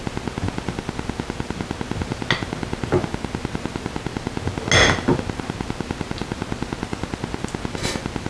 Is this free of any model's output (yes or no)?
yes